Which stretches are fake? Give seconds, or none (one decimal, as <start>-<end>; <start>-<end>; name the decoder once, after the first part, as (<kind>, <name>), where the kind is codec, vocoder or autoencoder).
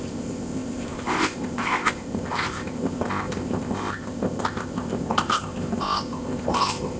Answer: 0.0-7.0 (codec, ZipCodec)